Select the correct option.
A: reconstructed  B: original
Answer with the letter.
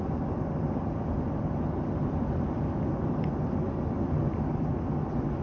B